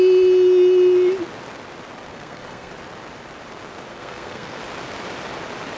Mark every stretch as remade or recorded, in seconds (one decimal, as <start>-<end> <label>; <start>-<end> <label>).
0.0-2.1 recorded; 2.1-2.7 remade; 2.7-3.9 recorded; 3.9-4.6 remade; 4.6-5.8 recorded